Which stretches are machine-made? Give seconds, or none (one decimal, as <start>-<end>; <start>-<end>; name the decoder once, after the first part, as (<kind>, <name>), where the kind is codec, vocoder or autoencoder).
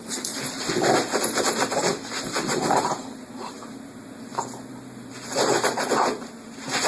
none